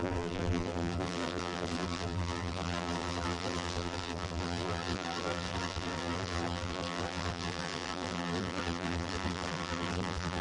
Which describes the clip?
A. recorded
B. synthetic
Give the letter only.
B